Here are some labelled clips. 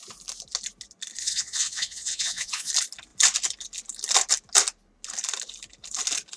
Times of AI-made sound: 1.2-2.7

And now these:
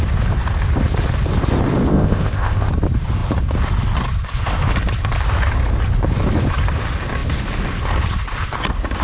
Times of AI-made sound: 1.9-2.7

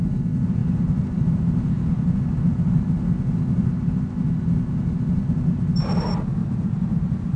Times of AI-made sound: 6.4-7.4

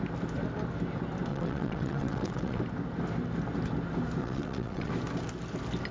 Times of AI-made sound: 1.3-2.6; 4.2-4.9

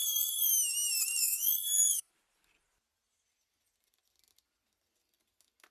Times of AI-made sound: 0.0-0.5; 1.2-2.1

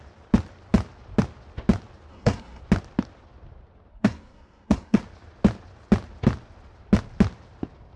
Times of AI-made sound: 2.1-2.6; 3.9-5.0